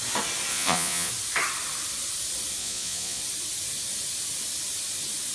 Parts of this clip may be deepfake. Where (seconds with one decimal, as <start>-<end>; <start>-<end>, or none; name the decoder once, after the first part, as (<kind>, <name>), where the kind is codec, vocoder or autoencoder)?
0.5-1.1 (vocoder, Vocos); 2.6-3.2